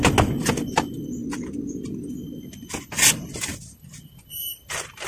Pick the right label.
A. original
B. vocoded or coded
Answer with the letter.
A